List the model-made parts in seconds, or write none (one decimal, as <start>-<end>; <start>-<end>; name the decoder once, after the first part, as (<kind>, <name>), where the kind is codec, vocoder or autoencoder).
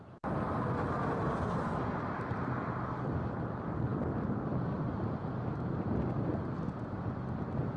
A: none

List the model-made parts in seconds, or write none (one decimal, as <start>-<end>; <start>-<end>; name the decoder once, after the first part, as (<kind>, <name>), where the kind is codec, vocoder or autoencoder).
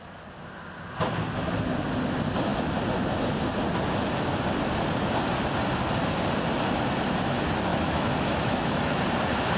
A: 7.7-9.0 (autoencoder, DAC-VAE)